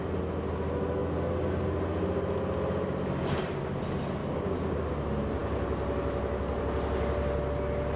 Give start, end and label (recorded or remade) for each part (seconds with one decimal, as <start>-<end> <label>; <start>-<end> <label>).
0.0-4.2 recorded; 4.2-4.9 remade; 4.9-8.0 recorded